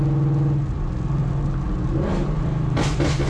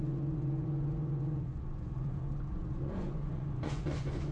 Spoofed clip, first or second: second